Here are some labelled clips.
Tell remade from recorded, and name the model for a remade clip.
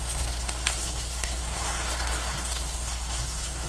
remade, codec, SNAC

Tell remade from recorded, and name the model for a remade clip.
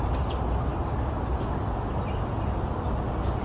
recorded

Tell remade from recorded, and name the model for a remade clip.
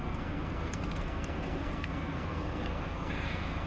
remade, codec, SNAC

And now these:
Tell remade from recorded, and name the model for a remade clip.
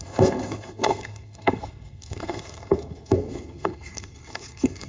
remade, codec, SNAC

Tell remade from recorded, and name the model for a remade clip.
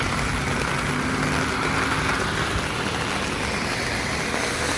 recorded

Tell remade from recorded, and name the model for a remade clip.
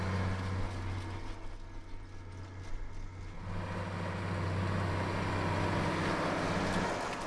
recorded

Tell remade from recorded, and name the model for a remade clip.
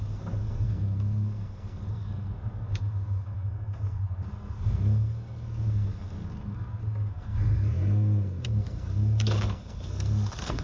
remade, codec, SNAC